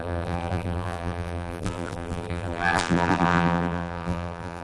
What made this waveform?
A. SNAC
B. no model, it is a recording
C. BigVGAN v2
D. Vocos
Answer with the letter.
C